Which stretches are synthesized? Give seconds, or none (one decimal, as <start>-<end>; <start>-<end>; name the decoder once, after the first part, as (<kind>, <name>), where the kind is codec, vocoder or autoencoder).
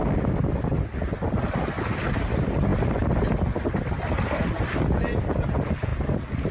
none